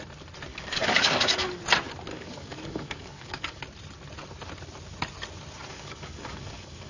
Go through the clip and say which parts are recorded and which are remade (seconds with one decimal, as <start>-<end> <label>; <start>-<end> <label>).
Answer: 0.0-0.5 recorded; 0.5-1.6 remade; 1.6-2.1 recorded; 2.1-3.6 remade; 3.6-5.7 recorded; 5.7-6.9 remade